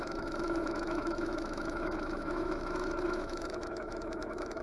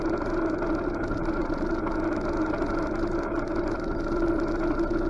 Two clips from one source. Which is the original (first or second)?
second